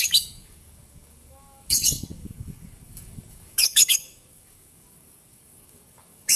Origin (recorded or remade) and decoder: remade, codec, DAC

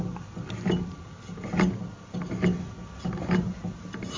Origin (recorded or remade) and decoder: recorded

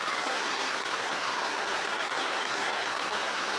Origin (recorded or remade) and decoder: remade, codec, SNAC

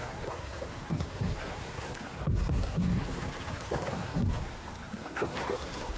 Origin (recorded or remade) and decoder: remade, codec, SNAC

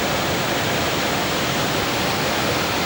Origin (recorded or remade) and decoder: recorded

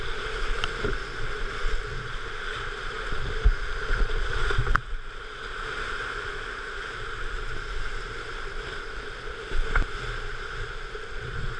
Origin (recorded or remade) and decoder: recorded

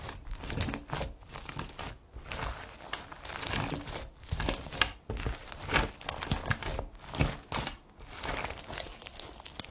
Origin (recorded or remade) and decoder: recorded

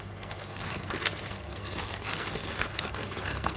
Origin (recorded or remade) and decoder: remade, codec, SNAC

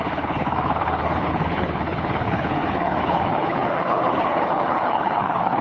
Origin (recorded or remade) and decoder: remade, codec, HILCodec